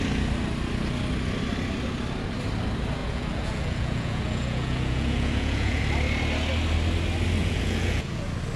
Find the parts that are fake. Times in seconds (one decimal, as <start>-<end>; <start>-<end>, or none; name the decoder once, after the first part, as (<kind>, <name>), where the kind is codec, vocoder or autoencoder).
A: 3.0-5.8 (vocoder, Vocos); 7.4-8.2